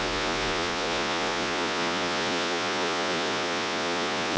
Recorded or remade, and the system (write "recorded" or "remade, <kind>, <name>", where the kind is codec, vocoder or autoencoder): remade, vocoder, Vocos